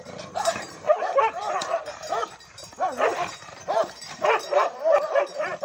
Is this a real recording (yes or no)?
no